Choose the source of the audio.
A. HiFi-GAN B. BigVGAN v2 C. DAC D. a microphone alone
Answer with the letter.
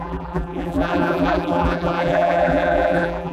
B